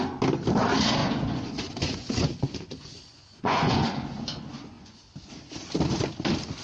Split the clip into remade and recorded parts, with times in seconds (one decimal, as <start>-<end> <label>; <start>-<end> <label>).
0.0-1.0 recorded; 1.0-5.0 remade; 5.0-6.6 recorded